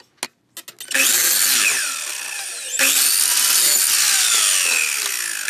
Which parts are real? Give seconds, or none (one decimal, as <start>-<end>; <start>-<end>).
0.0-5.5